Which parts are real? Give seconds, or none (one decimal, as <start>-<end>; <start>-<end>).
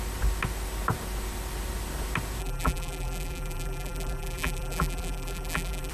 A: 0.0-2.4